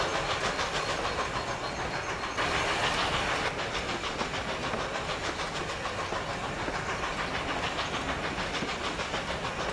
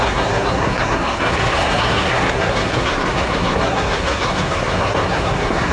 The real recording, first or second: first